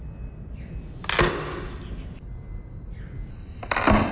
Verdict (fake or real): real